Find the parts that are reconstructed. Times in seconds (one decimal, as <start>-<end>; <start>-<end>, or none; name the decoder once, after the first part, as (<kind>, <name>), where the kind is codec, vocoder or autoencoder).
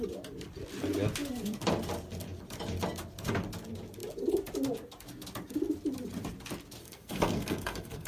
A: 6.8-8.1 (codec, SNAC)